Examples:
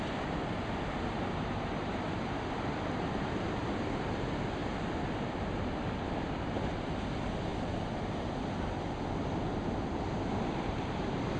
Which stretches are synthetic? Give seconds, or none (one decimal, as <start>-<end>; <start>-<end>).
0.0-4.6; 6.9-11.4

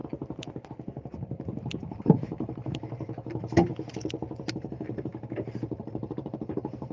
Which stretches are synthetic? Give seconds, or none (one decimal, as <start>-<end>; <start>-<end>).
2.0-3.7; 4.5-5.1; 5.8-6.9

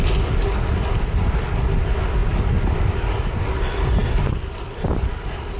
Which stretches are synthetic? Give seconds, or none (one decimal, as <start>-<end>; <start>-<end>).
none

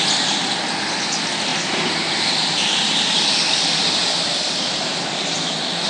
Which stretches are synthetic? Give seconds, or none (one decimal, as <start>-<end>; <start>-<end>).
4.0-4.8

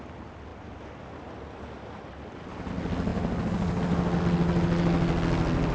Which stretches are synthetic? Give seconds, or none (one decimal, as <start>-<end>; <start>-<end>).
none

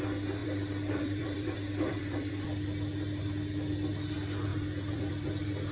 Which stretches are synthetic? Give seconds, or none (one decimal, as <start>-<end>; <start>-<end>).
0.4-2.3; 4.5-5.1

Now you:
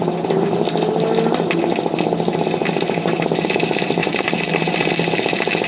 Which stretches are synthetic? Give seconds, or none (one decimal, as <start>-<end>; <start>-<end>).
4.0-4.9